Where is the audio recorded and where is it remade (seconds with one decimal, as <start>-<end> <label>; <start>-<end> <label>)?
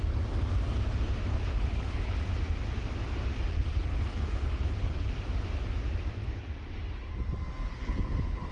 0.0-1.3 recorded; 1.3-2.2 remade; 2.2-3.5 recorded; 3.5-5.1 remade; 5.1-7.7 recorded; 7.7-8.5 remade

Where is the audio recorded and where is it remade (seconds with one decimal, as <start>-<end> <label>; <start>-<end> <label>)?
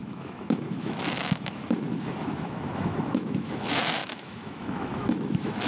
0.0-5.7 remade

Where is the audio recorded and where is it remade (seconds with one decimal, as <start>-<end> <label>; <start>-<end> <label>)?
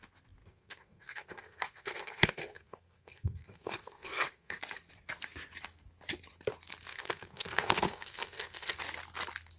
0.0-0.4 recorded; 0.4-4.6 remade; 4.6-6.9 recorded; 6.9-8.8 remade; 8.8-9.6 recorded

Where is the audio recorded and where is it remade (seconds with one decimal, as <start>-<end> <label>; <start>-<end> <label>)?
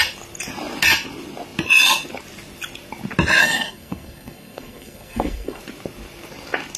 0.0-3.4 recorded; 3.4-5.6 remade; 5.6-6.8 recorded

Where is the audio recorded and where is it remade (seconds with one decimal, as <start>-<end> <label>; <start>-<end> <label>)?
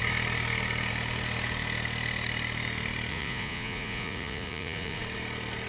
0.0-3.1 recorded; 3.1-5.0 remade; 5.0-5.7 recorded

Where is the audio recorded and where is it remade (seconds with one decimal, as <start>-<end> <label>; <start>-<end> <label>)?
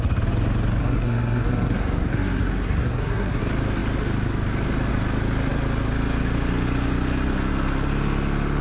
0.0-0.8 recorded; 0.8-3.4 remade; 3.4-8.6 recorded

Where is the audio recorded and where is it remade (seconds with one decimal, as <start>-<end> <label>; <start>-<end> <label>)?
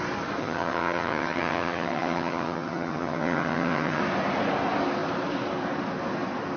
0.0-0.4 recorded; 0.4-4.0 remade; 4.0-6.6 recorded